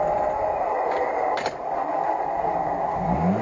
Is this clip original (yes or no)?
yes